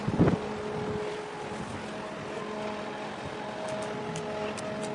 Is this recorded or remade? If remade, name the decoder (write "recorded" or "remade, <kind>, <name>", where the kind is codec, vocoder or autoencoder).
recorded